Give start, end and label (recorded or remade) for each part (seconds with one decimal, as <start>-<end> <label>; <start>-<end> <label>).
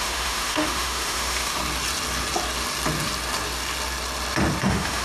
0.0-1.6 remade; 1.6-4.6 recorded; 4.6-5.0 remade